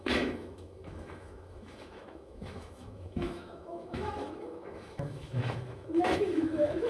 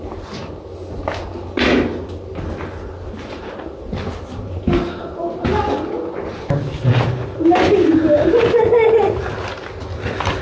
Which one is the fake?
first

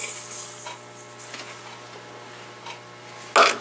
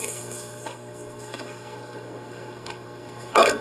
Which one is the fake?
second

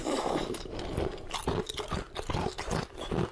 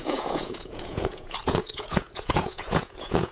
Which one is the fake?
second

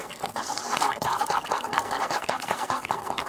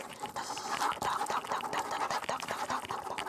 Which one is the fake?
first